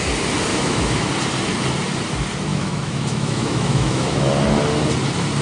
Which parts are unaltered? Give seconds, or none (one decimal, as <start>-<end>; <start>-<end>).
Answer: 0.0-0.5; 1.1-2.5; 4.3-5.4